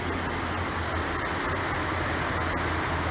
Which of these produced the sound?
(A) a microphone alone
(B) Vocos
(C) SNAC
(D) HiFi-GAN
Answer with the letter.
A